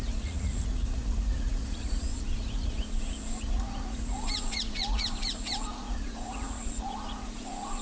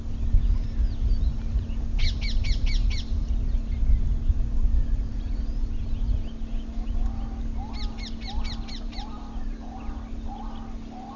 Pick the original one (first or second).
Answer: second